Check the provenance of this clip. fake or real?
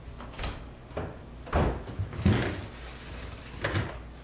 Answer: real